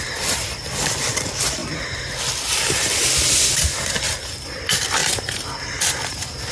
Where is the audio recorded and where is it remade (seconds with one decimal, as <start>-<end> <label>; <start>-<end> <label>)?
0.0-6.5 recorded